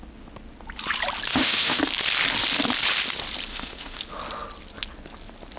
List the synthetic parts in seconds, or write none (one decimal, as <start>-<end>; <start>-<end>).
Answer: 1.3-1.8; 3.5-4.0